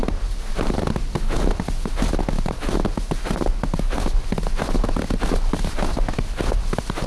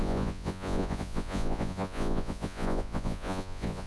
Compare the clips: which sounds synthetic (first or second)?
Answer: second